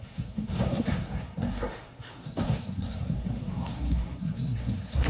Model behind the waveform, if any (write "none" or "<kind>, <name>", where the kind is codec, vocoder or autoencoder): codec, SNAC